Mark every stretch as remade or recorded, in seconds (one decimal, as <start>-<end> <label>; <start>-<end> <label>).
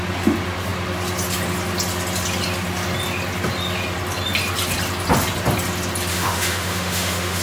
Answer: 0.0-6.1 recorded; 6.1-7.4 remade